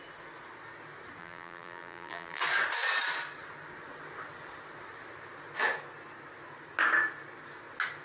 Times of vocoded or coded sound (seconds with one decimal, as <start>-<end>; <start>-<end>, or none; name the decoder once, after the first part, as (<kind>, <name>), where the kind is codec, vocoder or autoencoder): 1.2-2.4 (vocoder, BigVGAN v2)